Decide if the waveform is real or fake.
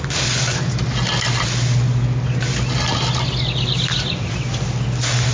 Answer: real